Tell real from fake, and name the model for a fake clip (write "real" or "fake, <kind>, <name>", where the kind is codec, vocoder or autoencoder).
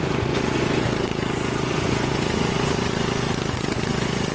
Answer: fake, vocoder, Vocos